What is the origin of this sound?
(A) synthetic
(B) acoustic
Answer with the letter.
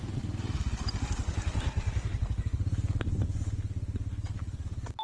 B